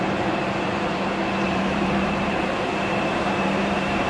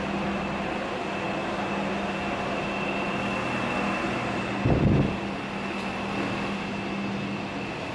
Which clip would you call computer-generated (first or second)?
first